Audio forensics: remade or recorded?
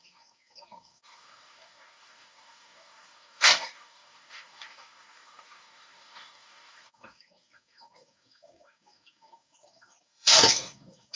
remade